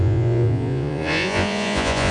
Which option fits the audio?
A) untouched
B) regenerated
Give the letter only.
B